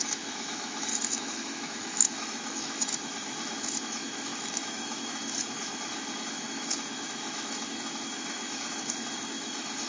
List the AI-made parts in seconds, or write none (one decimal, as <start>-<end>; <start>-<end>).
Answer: 0.0-9.9